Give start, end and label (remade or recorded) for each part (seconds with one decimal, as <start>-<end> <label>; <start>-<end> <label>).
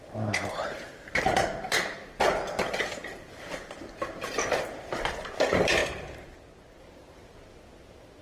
0.0-3.0 remade; 3.0-4.2 recorded; 4.2-5.8 remade; 5.8-6.8 recorded; 6.8-8.2 remade